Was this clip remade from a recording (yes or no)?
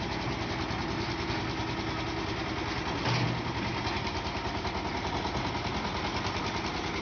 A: no